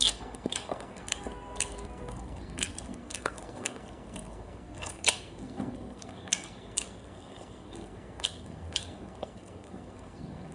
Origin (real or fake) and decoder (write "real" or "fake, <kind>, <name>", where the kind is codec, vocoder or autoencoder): fake, codec, SNAC